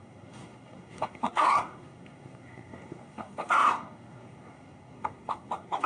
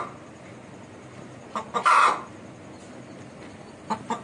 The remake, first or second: first